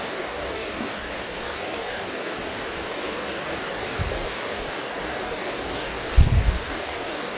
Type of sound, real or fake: fake